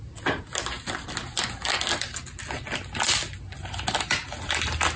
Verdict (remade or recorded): recorded